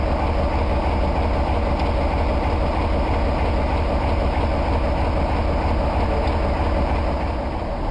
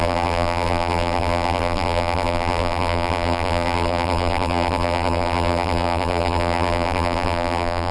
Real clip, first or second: first